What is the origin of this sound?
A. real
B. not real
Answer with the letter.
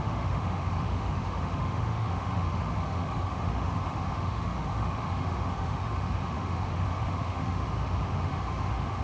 B